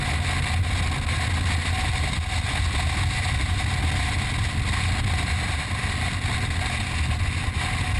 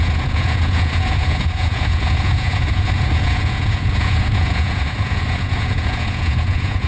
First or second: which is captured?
first